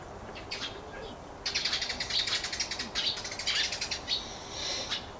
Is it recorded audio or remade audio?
recorded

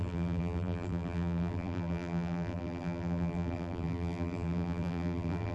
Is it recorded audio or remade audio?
remade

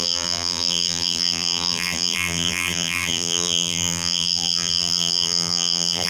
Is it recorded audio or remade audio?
remade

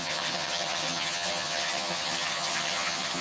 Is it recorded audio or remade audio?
remade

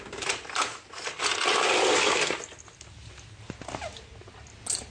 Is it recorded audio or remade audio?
recorded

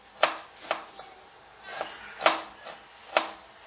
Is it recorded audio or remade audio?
recorded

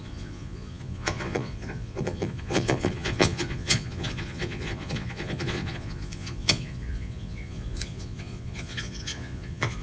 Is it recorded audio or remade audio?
remade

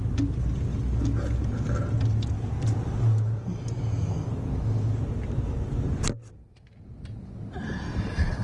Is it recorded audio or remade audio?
recorded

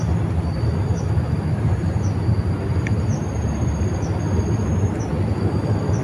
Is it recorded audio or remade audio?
recorded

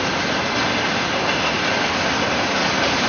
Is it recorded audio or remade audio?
recorded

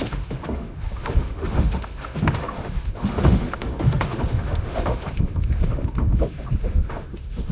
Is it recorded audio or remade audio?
remade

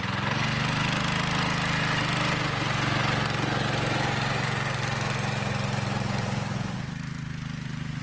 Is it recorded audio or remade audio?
recorded